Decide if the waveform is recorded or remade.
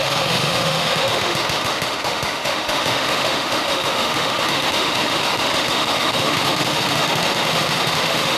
remade